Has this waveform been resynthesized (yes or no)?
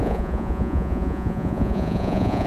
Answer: yes